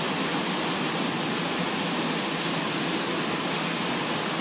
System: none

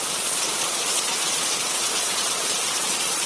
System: vocoder, Vocos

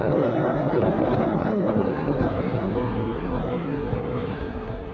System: codec, SNAC